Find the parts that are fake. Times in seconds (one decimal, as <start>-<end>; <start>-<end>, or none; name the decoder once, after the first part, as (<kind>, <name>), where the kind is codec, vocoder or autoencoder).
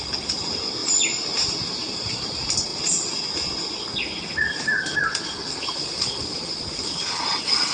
none